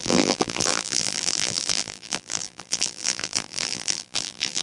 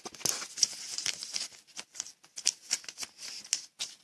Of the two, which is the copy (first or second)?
first